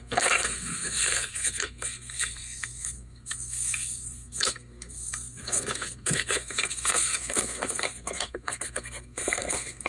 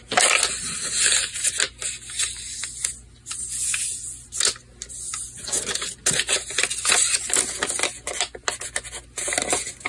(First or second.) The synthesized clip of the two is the first